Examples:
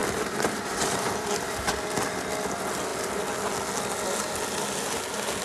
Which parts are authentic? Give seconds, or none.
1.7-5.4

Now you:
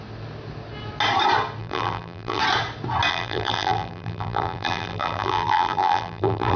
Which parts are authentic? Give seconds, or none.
0.0-1.6; 2.4-3.1